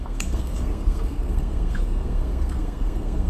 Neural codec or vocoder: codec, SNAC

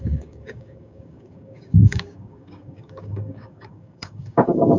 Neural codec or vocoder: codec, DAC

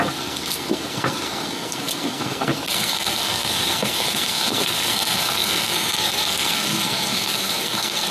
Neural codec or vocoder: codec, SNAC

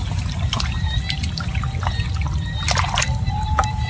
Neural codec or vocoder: none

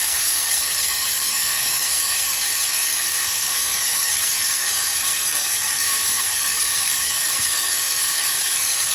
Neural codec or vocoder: codec, SNAC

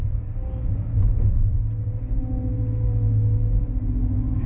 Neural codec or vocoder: none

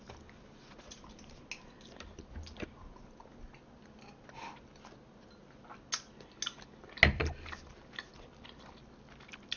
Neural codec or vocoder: none